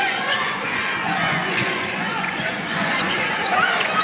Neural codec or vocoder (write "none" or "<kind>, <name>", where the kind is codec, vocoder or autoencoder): vocoder, Vocos